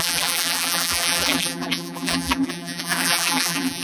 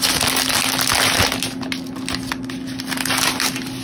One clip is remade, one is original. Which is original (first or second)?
second